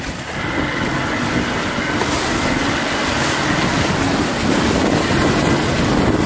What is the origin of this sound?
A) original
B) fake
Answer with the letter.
A